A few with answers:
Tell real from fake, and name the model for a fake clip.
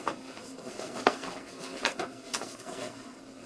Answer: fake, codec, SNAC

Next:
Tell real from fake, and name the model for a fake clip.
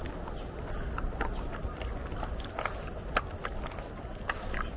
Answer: real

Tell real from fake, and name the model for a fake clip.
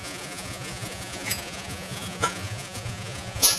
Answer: fake, vocoder, Vocos